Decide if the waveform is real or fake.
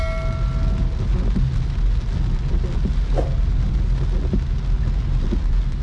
real